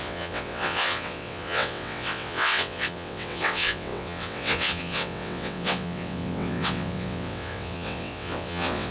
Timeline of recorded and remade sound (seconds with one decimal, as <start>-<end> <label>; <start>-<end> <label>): 0.0-8.9 remade